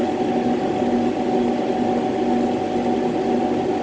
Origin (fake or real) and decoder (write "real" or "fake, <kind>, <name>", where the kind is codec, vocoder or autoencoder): real